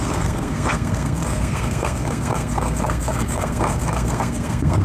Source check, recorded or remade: remade